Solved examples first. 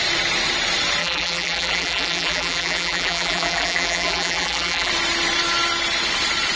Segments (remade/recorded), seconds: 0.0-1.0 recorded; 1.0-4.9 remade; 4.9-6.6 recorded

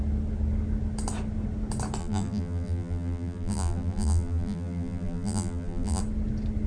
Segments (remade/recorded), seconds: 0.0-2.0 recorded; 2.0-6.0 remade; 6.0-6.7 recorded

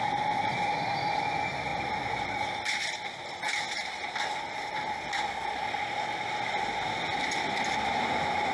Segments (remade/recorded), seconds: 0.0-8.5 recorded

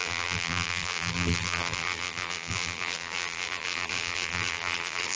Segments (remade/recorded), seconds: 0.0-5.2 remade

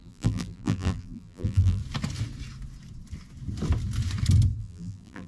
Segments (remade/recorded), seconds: 0.0-1.8 remade; 1.8-4.6 recorded; 4.6-5.3 remade

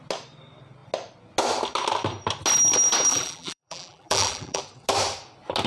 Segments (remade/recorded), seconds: 0.0-3.1 recorded; 3.1-4.6 remade; 4.6-5.7 recorded

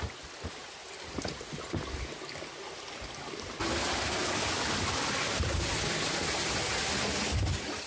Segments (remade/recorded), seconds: 0.0-7.9 recorded

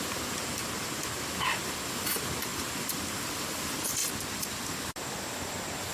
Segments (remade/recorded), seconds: 0.0-0.6 remade; 0.6-2.1 recorded; 2.1-4.0 remade; 4.0-5.9 recorded